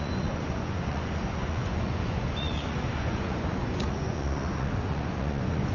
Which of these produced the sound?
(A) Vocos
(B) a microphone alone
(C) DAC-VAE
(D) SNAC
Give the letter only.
A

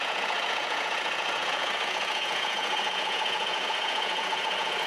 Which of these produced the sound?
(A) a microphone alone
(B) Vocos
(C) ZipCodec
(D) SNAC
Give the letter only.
B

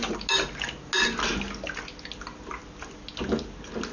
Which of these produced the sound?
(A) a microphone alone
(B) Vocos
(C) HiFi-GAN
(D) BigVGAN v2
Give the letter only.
A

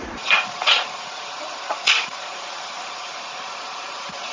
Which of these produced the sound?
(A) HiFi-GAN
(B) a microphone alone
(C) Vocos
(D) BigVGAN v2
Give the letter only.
C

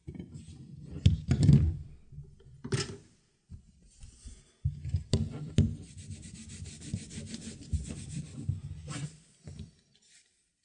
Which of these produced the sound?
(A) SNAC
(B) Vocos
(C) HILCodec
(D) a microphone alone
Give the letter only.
D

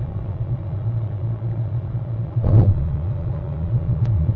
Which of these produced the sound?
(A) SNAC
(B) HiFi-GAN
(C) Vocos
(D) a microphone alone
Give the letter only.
C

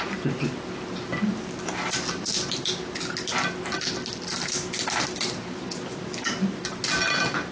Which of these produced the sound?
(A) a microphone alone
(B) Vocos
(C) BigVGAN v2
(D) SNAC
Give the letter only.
A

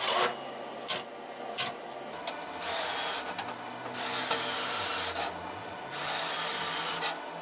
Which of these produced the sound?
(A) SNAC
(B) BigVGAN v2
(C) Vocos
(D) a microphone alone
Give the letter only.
D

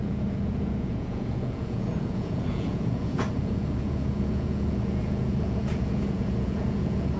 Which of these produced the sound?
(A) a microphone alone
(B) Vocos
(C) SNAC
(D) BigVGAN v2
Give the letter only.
B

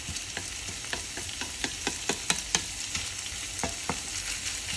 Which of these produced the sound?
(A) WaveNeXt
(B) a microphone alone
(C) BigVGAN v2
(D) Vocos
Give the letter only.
B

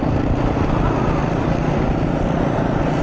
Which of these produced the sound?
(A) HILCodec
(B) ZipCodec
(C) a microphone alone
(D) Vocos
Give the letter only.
C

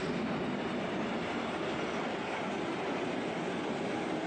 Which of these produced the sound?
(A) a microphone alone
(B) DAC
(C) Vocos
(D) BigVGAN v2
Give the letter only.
A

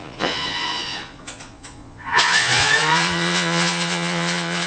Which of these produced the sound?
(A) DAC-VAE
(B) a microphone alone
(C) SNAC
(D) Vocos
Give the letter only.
D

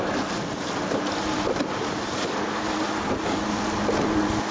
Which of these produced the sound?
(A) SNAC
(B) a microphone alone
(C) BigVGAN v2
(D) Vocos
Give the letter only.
B